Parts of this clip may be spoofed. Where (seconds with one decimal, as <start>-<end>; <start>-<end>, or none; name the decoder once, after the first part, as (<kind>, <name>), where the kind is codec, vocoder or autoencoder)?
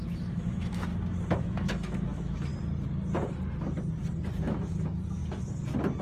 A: 0.0-0.9 (autoencoder, DAC-VAE); 1.4-2.5; 4.4-5.2